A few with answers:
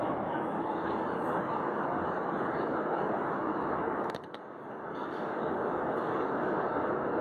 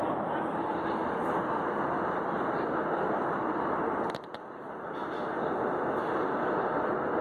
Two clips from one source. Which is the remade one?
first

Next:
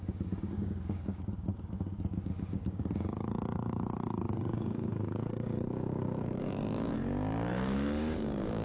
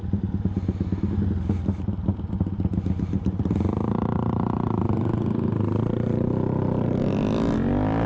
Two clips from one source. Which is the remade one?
first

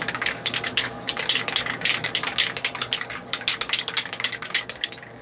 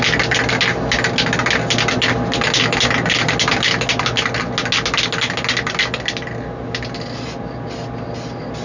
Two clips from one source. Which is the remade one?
first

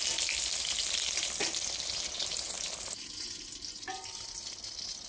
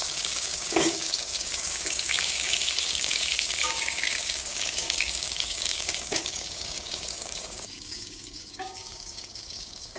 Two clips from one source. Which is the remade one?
second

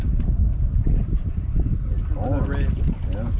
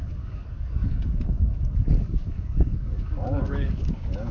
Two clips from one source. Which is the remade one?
second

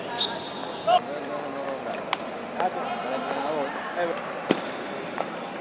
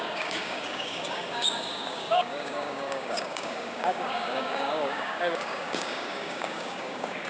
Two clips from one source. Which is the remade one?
second